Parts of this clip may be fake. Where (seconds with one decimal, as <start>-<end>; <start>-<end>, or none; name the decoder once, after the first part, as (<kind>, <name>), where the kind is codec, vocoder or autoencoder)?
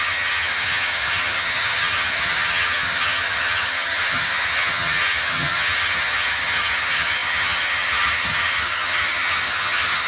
0.0-10.1 (vocoder, HiFi-GAN)